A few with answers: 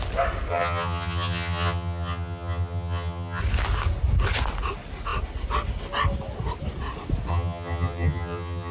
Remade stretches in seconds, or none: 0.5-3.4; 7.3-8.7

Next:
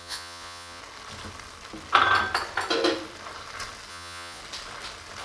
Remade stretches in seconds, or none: 0.0-0.8; 3.9-4.4

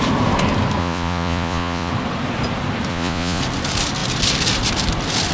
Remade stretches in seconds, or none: 0.8-1.9; 2.9-3.4

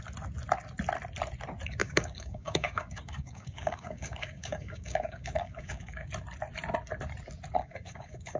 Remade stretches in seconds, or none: 1.8-6.1; 7.6-8.4

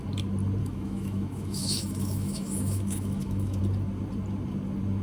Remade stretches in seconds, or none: 0.6-3.6

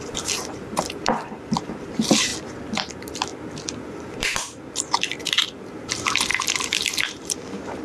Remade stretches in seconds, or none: 0.0-2.3; 2.9-3.3; 3.9-7.8

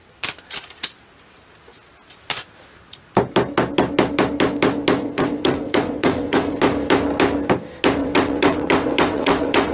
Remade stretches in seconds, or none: 5.0-6.6; 8.0-9.7

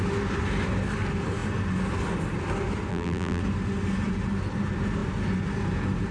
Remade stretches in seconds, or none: 2.9-3.4